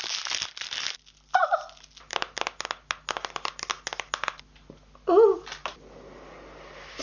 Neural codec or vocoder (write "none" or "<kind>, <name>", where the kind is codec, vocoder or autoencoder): none